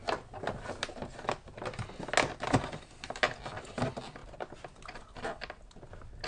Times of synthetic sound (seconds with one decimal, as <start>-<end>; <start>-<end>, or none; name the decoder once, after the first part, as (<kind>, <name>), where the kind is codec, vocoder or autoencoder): none